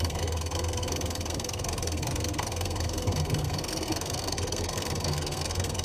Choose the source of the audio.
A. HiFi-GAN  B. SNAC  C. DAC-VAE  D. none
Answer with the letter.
B